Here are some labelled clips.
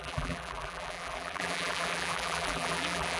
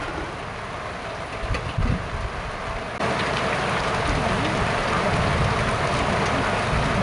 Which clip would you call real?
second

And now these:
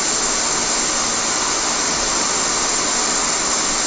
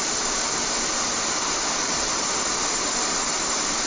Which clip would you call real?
first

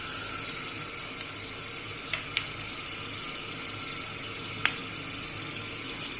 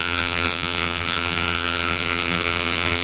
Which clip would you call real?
first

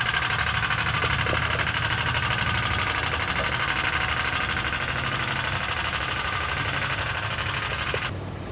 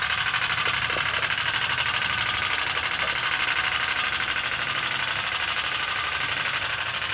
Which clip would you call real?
first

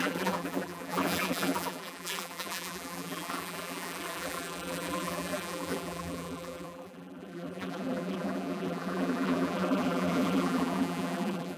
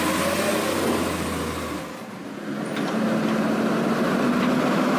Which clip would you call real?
second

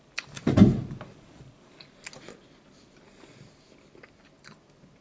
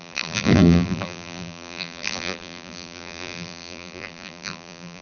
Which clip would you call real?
first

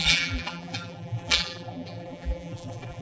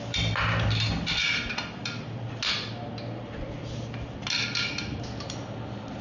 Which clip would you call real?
second